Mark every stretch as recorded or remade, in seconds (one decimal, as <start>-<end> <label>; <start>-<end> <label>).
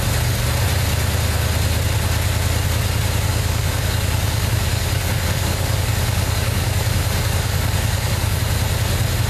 0.0-3.3 recorded; 3.3-8.4 remade; 8.4-9.3 recorded